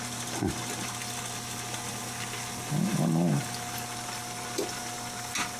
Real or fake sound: real